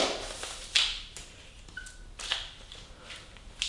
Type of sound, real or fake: real